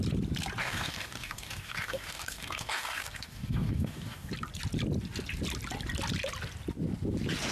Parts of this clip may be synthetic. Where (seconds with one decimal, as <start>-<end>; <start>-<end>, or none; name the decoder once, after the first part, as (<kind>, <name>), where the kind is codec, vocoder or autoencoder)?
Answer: 0.6-4.3 (codec, DAC)